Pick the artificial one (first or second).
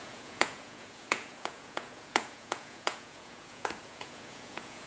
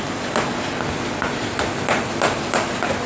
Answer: first